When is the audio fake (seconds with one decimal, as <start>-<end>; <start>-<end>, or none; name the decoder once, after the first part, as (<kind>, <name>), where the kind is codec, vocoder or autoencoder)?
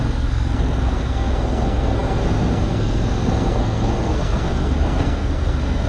0.0-5.9 (codec, SNAC)